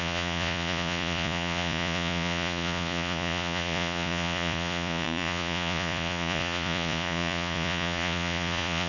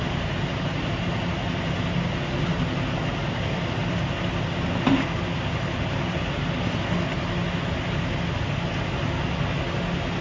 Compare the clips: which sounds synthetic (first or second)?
first